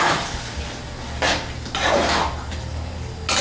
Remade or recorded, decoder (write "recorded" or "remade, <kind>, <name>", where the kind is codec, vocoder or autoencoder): recorded